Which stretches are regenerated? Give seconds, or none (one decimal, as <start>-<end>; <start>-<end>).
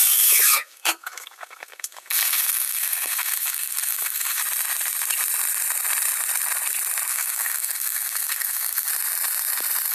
0.0-4.4; 7.1-8.9